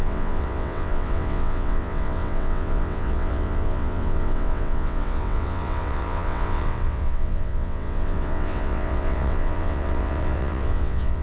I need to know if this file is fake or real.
fake